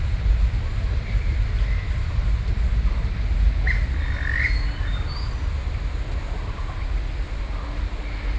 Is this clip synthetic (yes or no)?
no